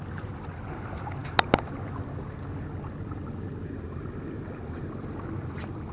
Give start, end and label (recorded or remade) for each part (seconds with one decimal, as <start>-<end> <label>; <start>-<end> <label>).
0.0-5.9 recorded